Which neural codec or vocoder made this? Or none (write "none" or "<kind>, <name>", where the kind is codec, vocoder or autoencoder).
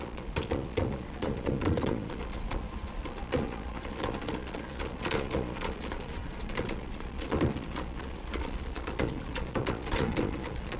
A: vocoder, Vocos